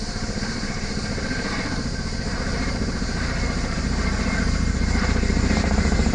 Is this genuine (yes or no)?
no